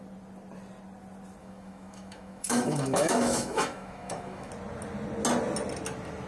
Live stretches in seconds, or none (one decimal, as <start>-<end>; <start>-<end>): 0.0-1.4; 4.5-6.3